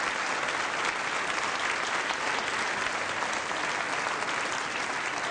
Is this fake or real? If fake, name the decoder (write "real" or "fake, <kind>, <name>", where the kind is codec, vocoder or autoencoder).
real